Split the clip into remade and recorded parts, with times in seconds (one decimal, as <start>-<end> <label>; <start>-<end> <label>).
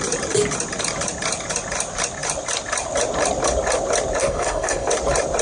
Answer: 0.0-4.2 recorded; 4.2-4.9 remade; 4.9-5.4 recorded